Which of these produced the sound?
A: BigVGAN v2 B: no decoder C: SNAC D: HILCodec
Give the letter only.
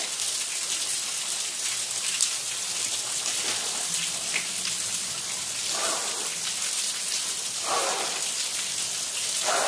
B